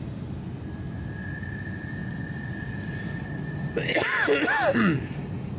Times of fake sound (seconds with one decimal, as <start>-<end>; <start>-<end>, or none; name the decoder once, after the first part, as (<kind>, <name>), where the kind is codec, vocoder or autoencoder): none